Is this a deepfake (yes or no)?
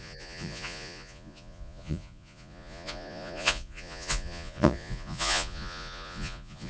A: yes